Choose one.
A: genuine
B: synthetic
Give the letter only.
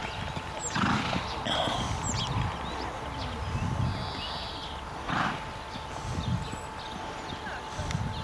A